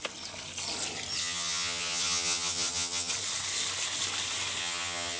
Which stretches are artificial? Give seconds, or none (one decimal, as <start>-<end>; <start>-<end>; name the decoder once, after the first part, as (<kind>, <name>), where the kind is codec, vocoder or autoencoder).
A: 1.2-3.1 (vocoder, HiFi-GAN); 4.6-5.2